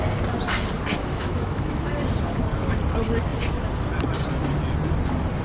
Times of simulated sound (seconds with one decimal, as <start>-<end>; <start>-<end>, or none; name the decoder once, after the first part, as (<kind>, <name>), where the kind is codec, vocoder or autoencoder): 0.9-1.9 (autoencoder, DAC-VAE)